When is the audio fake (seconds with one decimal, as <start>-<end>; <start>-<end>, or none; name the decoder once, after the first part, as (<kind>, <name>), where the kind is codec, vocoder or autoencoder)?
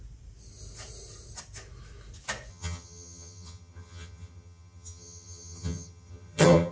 2.5-6.7 (vocoder, HiFi-GAN)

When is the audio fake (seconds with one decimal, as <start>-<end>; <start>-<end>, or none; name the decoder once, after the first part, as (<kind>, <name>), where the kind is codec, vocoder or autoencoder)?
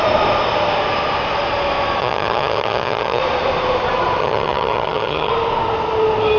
2.0-3.2 (vocoder, HiFi-GAN); 4.2-5.3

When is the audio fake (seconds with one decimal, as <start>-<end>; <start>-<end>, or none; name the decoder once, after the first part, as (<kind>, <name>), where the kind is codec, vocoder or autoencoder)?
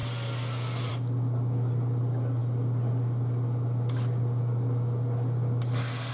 none